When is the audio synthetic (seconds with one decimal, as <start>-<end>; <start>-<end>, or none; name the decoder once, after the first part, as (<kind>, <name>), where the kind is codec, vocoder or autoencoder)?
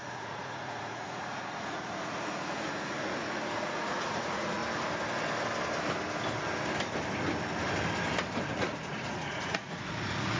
0.0-4.6 (vocoder, Vocos); 8.5-10.4